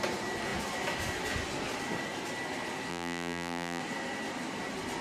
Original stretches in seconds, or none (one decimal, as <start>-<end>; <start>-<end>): 0.0-2.9; 3.8-5.0